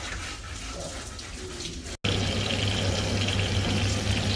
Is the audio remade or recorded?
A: recorded